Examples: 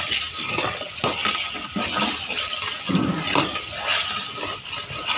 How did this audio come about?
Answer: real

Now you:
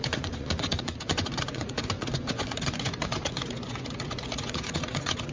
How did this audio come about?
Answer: fake